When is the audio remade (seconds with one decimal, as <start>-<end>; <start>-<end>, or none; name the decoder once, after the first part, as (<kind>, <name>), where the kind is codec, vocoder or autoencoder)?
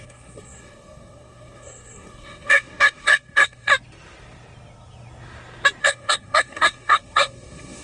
0.0-3.7 (codec, SNAC); 5.8-7.8